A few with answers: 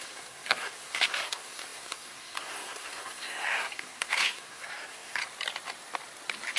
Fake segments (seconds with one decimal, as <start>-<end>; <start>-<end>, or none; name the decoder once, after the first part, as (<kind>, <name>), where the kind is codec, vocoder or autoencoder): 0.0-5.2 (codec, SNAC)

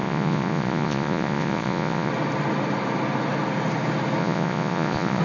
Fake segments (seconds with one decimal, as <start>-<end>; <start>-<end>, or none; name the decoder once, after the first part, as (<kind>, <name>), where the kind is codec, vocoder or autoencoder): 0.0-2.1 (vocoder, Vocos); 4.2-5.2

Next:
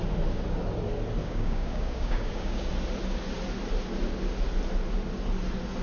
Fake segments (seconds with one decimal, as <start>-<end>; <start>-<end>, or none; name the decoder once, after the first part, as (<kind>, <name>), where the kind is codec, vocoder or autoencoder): 1.2-2.7 (codec, DAC)

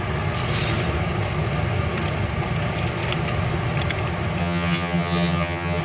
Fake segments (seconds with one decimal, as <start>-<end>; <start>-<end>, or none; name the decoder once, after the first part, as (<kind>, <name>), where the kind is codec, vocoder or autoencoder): 4.4-5.8 (vocoder, HiFi-GAN)

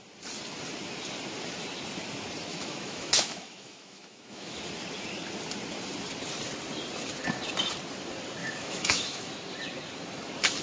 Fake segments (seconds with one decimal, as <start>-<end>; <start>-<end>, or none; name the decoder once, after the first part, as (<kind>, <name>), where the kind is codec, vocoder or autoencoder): 2.5-4.6 (autoencoder, DAC-VAE); 8.4-9.3

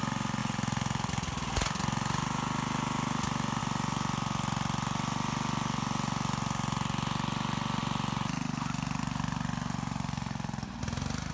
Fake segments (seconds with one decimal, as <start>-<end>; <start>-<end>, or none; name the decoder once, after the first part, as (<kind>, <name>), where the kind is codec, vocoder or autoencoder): none

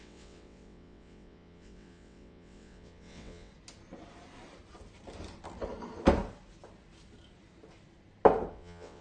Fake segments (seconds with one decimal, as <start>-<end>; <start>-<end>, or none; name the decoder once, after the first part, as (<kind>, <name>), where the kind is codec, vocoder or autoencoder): 0.0-3.5 (vocoder, WaveNeXt); 8.5-9.0

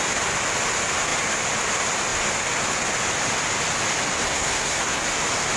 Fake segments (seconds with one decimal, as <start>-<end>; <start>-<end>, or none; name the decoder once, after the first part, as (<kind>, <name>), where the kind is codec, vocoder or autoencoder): 4.2-5.0 (codec, SNAC)